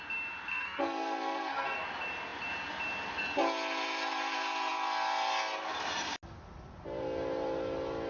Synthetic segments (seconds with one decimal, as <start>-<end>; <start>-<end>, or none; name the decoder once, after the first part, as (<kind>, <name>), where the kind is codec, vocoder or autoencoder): 0.5-1.8 (codec, SNAC)

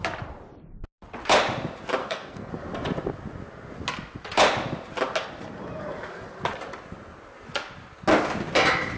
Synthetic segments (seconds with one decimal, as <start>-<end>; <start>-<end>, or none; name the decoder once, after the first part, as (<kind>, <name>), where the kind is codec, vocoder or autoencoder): 2.0-2.5 (codec, SNAC)

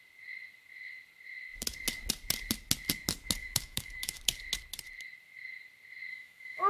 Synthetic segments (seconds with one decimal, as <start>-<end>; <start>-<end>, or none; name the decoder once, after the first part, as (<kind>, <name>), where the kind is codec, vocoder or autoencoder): 3.4-4.2 (autoencoder, DAC-VAE); 6.1-6.7

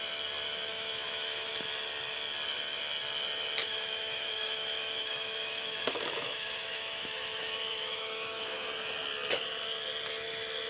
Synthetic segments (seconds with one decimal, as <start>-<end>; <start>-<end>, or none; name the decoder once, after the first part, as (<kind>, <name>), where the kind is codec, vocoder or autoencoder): 0.7-1.5 (autoencoder, DAC-VAE); 3.6-8.7

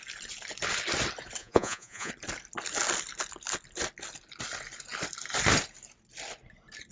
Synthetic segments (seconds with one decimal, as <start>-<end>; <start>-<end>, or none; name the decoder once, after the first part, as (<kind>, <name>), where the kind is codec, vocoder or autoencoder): 1.4-2.1 (vocoder, Vocos)

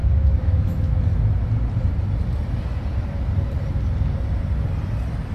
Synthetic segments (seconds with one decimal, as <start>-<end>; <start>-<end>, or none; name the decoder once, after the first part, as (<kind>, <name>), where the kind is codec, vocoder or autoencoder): 0.0-1.0 (autoencoder, DAC-VAE)

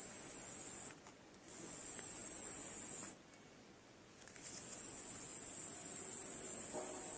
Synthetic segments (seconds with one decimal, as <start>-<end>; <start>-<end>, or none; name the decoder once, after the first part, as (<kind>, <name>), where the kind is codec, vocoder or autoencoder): 0.0-2.6 (vocoder, Vocos); 3.4-5.3

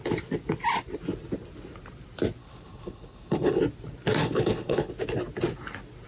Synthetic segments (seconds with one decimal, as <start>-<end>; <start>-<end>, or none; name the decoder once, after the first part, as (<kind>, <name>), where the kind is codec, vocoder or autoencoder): 2.4-3.6 (codec, HILCodec); 4.2-4.9